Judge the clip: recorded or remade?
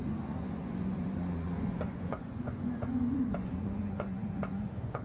remade